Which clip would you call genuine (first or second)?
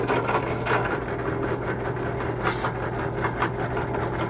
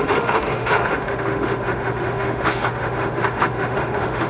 first